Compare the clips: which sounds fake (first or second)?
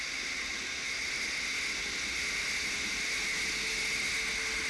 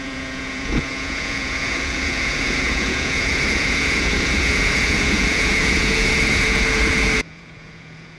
second